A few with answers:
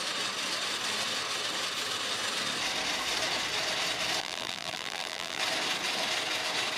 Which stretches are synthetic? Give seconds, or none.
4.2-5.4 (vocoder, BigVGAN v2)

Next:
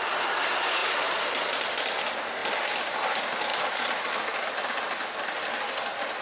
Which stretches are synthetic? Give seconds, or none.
0.8-1.3 (vocoder, BigVGAN v2); 3.5-4.7

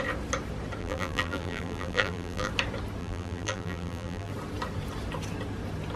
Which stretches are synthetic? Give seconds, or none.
0.8-2.5 (vocoder, BigVGAN v2); 3.0-4.3

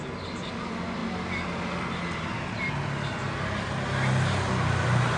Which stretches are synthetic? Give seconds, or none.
none

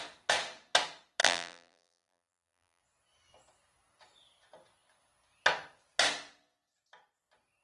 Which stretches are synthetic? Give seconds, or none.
1.2-2.8 (vocoder, BigVGAN v2)

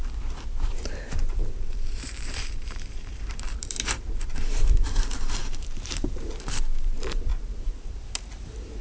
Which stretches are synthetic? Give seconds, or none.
0.0-8.8 (vocoder, BigVGAN v2)